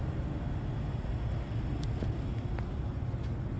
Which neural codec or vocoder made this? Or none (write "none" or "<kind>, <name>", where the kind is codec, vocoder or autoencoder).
none